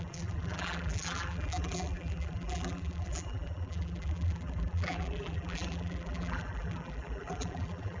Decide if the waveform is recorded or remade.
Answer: remade